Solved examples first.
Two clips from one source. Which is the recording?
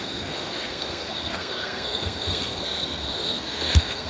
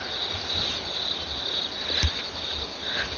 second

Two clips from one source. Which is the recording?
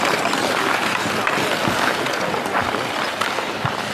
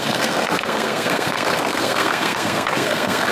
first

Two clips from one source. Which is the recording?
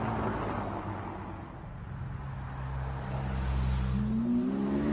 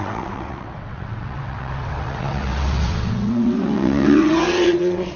first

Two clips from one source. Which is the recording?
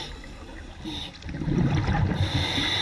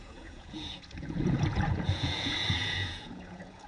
first